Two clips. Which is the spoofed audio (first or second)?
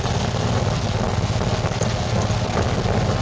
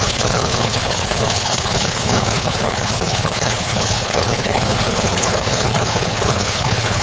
second